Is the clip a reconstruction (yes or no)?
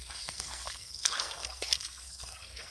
yes